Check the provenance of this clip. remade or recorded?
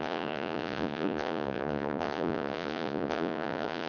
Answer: remade